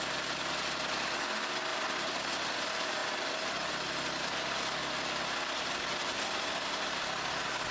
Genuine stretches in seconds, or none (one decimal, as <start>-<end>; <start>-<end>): 0.0-1.7; 2.6-7.7